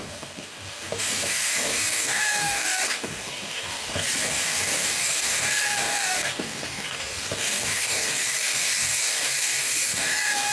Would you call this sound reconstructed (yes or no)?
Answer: yes